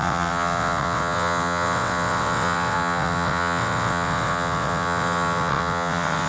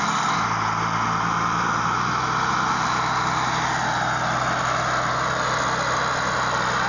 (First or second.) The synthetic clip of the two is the first